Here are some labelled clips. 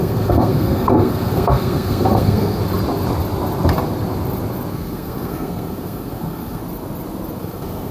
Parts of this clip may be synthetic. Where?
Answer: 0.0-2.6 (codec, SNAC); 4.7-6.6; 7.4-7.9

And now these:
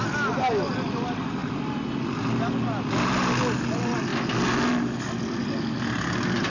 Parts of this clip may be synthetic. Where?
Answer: none